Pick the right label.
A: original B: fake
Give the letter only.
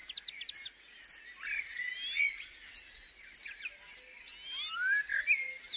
A